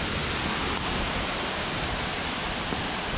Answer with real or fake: real